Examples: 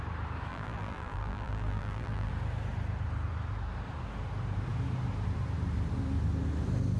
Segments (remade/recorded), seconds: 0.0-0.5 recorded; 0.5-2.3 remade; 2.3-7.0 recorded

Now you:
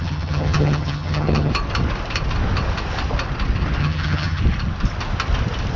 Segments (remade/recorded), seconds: 0.0-1.5 remade; 1.5-3.8 recorded; 3.8-4.4 remade; 4.4-5.8 recorded

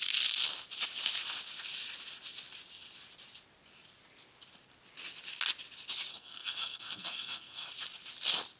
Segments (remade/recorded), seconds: 0.0-6.1 recorded; 6.1-7.7 remade; 7.7-8.6 recorded

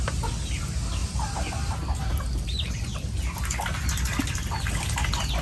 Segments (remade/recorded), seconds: 0.0-5.4 recorded

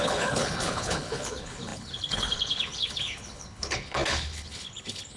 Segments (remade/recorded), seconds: 0.0-5.2 remade

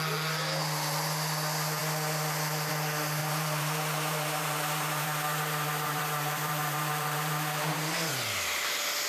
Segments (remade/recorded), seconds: 0.0-3.2 recorded; 3.2-8.1 remade; 8.1-9.1 recorded